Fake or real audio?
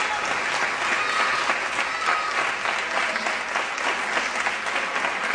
real